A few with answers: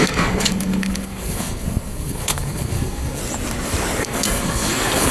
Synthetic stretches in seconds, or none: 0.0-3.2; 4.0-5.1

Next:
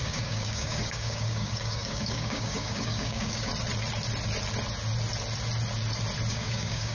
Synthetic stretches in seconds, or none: 0.0-3.5; 6.3-6.9

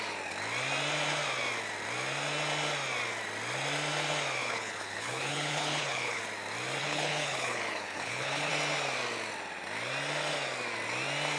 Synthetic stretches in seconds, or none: 4.4-6.2; 6.8-8.5

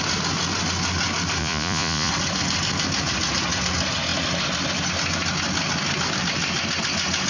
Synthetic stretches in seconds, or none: 1.4-2.1

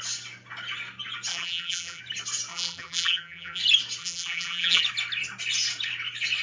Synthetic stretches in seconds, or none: 1.3-2.0; 2.5-3.6; 4.0-4.8

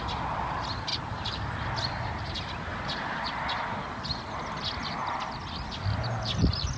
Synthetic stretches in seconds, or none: 0.9-1.4

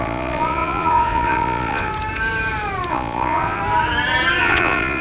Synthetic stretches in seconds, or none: 0.0-1.9; 2.9-3.6; 4.4-5.0

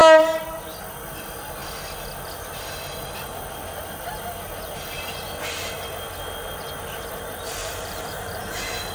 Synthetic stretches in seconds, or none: 7.6-8.9